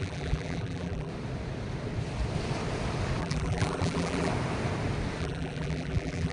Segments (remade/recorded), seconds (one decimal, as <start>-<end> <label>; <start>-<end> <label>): 0.0-1.1 remade; 1.1-3.2 recorded; 3.2-4.3 remade; 4.3-5.2 recorded; 5.2-6.3 remade